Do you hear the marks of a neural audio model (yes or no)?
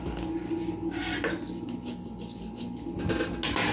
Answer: no